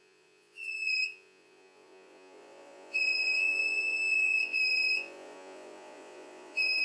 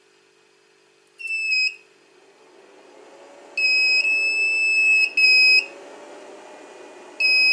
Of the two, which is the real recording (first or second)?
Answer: second